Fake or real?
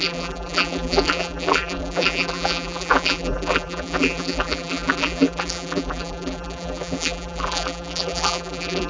fake